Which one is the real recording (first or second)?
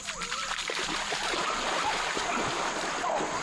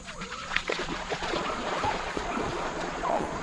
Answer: first